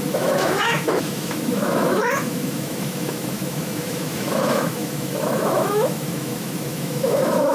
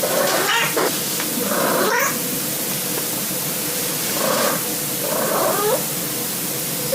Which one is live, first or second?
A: second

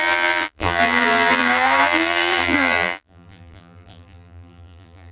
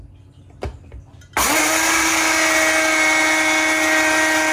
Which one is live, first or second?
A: second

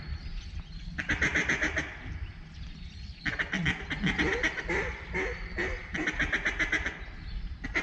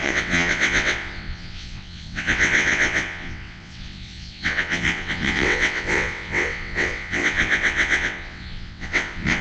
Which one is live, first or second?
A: first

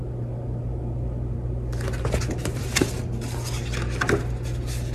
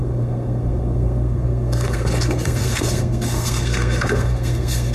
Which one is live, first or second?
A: first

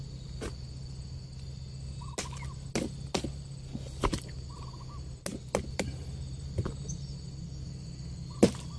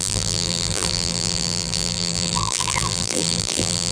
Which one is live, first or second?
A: first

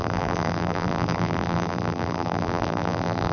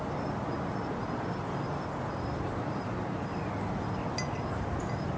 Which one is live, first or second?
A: second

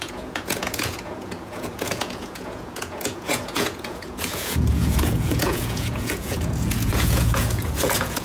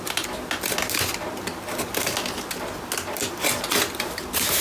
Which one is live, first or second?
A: second